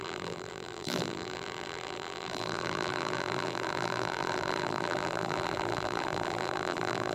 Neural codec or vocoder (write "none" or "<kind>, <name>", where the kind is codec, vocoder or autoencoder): vocoder, BigVGAN v2